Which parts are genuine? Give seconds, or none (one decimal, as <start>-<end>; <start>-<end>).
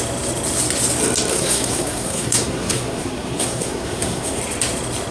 0.0-1.3; 4.4-5.1